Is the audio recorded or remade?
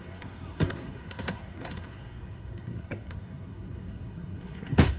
remade